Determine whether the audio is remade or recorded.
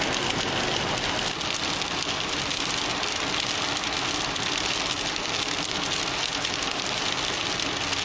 recorded